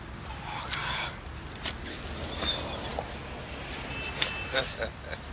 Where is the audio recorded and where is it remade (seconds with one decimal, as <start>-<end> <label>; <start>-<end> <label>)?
0.0-0.8 remade; 0.8-1.8 recorded; 1.8-5.3 remade